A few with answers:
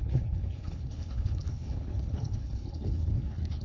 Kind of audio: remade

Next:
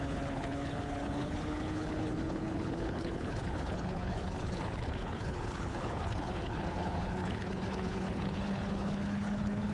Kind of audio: remade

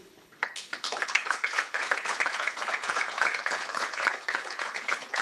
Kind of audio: remade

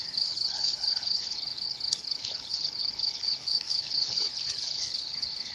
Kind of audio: remade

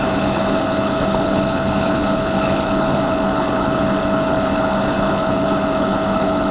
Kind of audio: remade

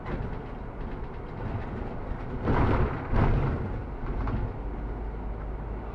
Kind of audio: recorded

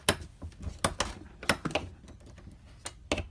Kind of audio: recorded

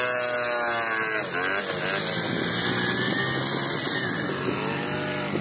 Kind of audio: recorded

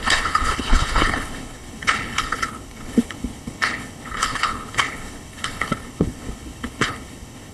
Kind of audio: remade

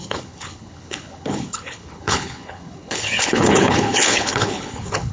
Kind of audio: remade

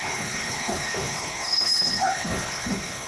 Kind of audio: remade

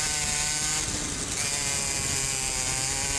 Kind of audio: recorded